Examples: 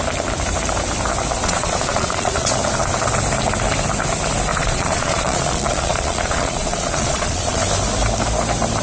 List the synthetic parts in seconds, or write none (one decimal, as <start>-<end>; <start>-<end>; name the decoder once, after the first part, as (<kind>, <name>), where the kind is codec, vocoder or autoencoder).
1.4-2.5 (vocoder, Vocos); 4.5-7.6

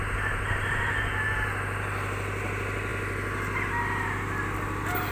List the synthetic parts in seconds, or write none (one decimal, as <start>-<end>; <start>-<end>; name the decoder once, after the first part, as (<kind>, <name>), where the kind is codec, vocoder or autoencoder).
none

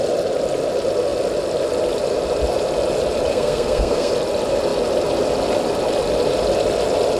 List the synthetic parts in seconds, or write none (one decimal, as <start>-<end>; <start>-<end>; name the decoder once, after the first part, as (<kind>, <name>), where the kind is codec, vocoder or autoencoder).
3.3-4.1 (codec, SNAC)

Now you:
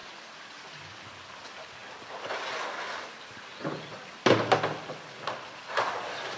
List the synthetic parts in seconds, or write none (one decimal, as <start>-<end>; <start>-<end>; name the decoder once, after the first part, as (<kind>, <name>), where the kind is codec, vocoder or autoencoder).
none

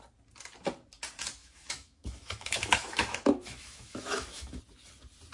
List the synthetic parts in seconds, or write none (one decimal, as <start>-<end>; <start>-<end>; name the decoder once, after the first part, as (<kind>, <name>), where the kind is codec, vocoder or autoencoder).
1.4-4.6 (autoencoder, DAC-VAE)

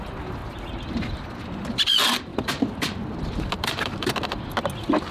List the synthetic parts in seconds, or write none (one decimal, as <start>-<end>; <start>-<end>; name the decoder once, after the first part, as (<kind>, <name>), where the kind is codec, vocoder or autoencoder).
2.3-4.1 (vocoder, BigVGAN v2)

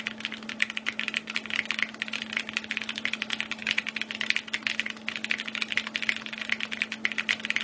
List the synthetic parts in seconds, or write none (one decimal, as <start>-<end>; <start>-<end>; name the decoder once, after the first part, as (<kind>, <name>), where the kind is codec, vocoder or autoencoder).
none